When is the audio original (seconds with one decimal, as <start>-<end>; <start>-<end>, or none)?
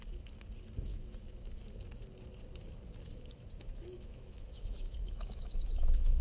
0.0-0.9; 1.6-3.1